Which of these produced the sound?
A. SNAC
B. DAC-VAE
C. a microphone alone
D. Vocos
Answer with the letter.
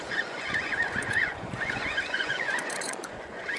D